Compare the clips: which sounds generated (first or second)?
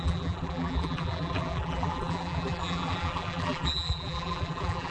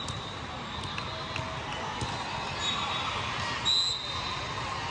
first